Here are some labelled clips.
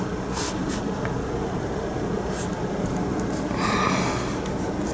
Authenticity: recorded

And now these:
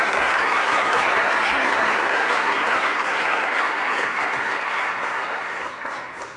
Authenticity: remade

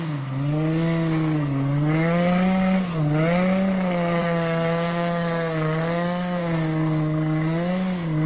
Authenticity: remade